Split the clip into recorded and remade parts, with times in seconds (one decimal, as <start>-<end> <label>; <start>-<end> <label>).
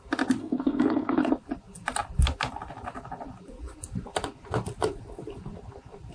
0.0-0.4 recorded; 0.4-1.3 remade; 1.3-6.1 recorded